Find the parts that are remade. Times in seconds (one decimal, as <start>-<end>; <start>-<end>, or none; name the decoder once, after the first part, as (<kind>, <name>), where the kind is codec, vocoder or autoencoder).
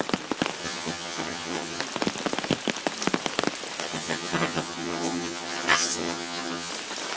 0.6-1.8 (vocoder, HiFi-GAN); 3.8-6.7